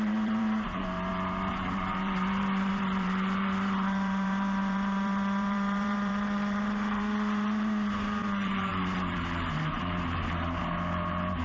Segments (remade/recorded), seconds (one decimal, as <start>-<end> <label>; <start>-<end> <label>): 0.0-11.4 remade